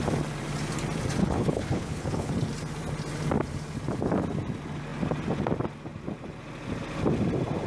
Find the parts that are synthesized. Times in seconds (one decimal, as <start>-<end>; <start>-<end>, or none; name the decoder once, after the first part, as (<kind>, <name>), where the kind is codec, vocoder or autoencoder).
1.2-2.3 (codec, HILCodec)